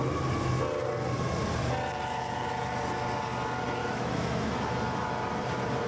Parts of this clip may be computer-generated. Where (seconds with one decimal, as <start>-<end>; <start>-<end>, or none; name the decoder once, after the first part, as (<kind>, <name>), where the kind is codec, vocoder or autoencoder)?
3.8-4.5 (autoencoder, DAC-VAE)